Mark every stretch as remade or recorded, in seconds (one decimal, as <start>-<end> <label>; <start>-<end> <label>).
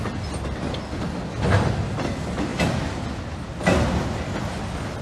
0.0-5.0 recorded